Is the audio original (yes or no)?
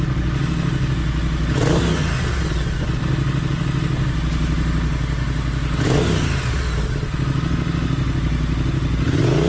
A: yes